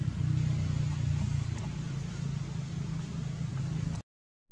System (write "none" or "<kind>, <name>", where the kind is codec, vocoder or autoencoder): none